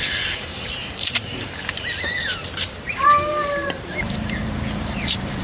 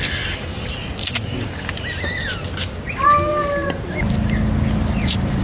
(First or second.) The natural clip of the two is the second